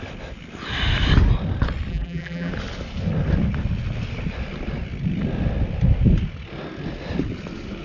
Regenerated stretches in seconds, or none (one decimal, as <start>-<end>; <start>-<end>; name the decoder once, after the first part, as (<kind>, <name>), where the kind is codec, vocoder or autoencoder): 1.9-2.5 (vocoder, BigVGAN v2)